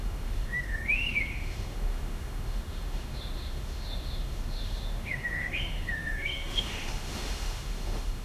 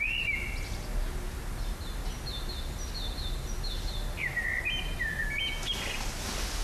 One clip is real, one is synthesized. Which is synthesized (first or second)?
first